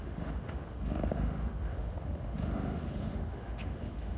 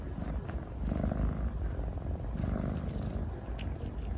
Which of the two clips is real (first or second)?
second